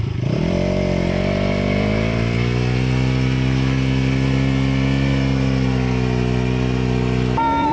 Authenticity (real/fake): fake